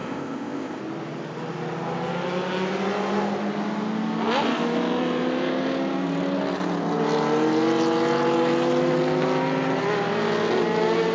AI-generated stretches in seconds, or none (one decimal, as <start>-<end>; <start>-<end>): 0.0-0.8